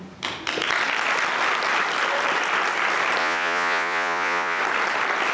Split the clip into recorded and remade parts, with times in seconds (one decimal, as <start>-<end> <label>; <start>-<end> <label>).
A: 0.0-3.2 recorded; 3.2-4.6 remade; 4.6-5.3 recorded